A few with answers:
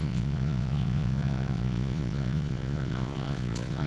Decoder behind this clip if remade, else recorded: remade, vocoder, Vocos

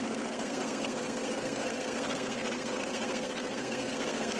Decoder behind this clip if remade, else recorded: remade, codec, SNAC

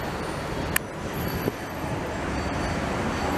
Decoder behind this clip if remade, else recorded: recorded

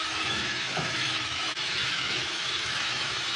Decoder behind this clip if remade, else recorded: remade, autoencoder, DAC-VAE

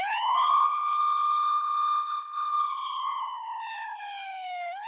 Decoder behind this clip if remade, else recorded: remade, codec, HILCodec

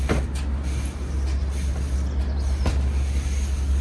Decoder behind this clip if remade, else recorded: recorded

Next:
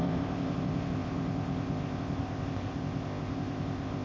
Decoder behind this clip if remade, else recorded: remade, codec, ZipCodec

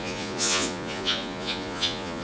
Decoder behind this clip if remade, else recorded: remade, vocoder, Vocos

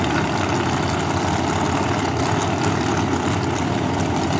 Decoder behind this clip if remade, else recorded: recorded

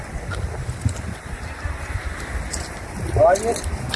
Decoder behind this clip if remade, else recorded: recorded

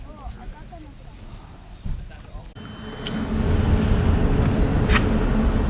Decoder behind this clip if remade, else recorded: recorded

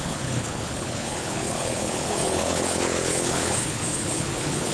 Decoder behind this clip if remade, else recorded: remade, codec, HILCodec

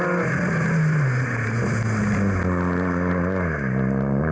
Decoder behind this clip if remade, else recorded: recorded